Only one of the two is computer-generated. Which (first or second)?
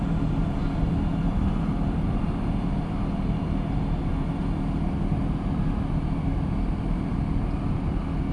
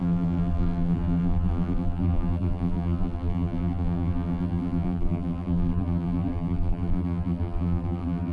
second